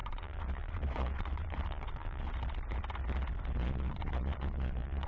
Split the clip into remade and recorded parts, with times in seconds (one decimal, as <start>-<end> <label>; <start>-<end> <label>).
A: 0.0-2.3 remade; 2.3-3.6 recorded; 3.6-5.1 remade